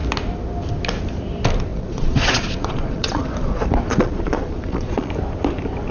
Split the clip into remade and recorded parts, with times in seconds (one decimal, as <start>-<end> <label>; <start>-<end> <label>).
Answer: 0.0-1.7 recorded; 1.7-5.1 remade; 5.1-5.9 recorded